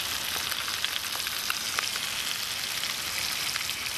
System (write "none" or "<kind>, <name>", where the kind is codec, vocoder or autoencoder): none